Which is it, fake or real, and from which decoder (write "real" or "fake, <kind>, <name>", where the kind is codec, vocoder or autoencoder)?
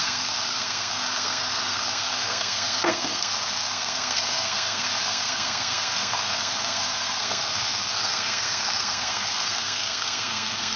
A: fake, codec, SNAC